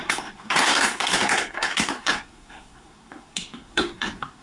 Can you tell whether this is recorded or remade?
remade